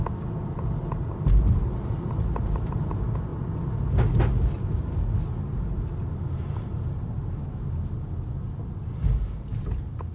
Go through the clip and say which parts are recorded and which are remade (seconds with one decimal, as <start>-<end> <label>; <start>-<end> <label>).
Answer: 0.0-10.1 recorded